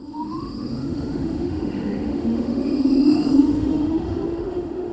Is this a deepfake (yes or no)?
yes